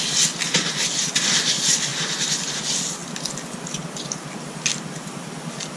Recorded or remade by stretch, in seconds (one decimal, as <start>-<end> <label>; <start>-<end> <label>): 0.0-5.8 recorded